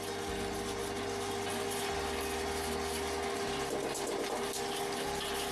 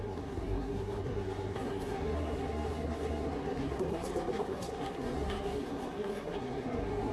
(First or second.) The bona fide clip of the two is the first